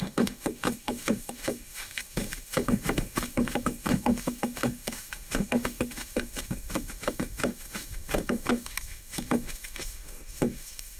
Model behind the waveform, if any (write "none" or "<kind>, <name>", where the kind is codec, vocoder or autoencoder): autoencoder, DAC-VAE